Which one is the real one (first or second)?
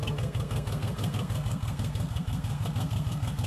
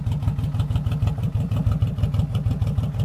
second